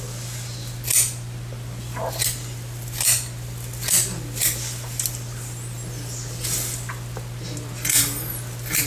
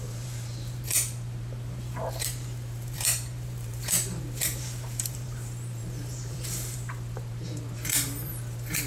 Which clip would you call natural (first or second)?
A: first